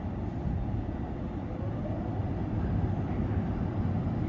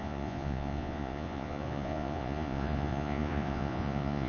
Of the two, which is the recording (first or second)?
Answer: first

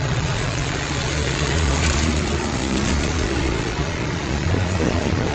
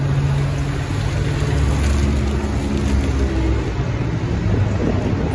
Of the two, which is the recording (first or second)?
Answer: second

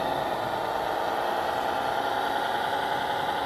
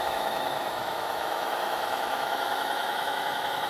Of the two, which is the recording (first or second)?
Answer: first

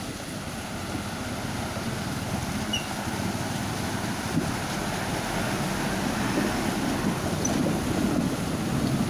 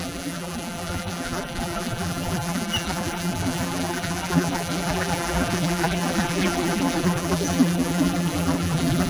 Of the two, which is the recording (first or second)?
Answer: first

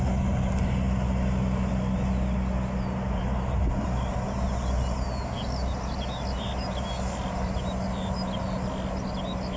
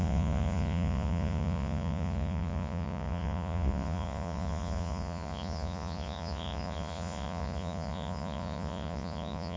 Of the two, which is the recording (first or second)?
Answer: first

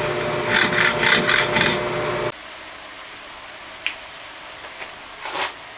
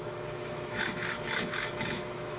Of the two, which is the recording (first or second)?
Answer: first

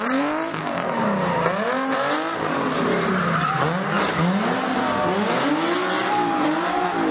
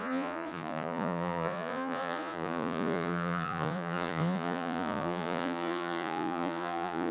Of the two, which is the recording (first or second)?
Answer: first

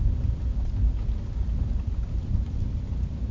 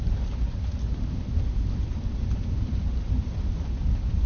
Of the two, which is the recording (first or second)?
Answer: first